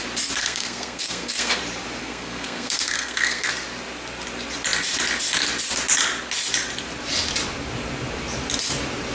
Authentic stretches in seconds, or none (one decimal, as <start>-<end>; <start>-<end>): 0.0-0.4; 1.6-2.0; 3.5-9.1